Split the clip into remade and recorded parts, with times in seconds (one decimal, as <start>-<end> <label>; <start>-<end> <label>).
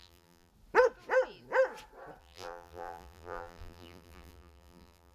0.0-0.5 remade; 0.5-2.2 recorded; 2.2-5.1 remade